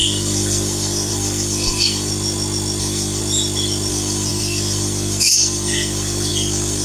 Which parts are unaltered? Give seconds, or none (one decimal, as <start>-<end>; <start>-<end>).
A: 2.1-2.8; 3.2-3.9